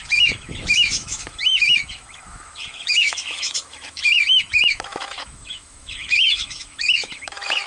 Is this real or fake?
fake